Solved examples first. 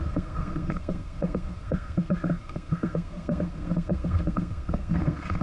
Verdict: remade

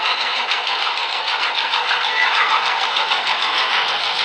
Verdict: remade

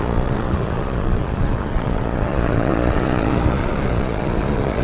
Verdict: remade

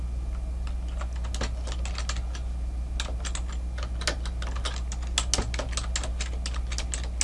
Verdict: recorded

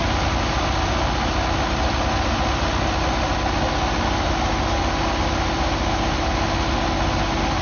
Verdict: recorded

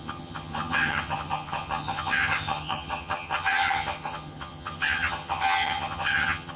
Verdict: remade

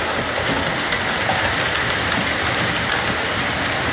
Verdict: recorded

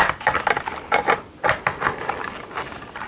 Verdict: recorded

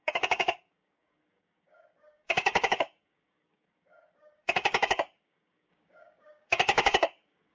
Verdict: remade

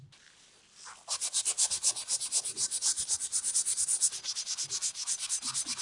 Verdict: recorded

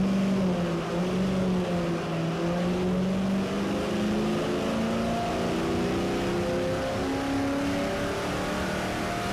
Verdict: recorded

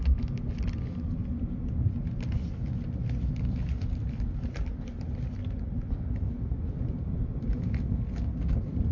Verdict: recorded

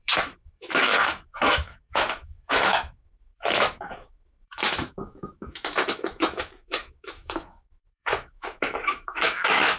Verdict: remade